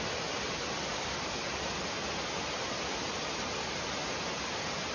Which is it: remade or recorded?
recorded